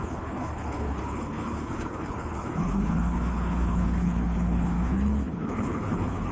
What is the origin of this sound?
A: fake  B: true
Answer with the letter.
A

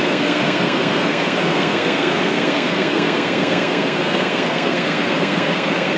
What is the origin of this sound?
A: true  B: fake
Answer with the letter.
B